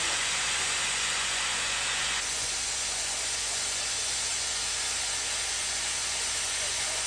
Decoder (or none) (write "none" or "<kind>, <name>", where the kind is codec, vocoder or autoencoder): vocoder, Vocos